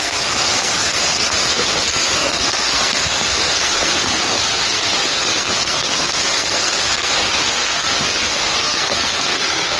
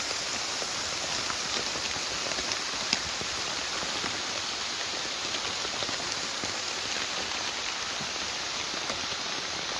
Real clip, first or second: second